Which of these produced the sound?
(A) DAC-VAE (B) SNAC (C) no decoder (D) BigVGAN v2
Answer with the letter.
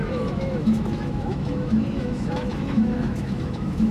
A